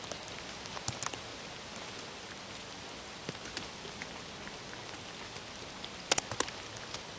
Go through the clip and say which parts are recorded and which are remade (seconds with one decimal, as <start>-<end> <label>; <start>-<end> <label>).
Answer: 0.0-1.3 recorded; 1.3-2.0 remade; 2.0-7.2 recorded